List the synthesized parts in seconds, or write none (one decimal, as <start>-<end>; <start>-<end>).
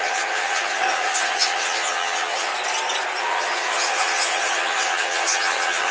0.0-2.5; 3.2-5.9